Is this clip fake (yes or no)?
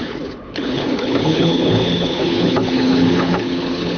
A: yes